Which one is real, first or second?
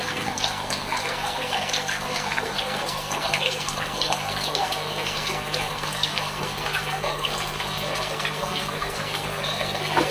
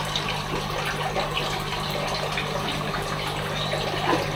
second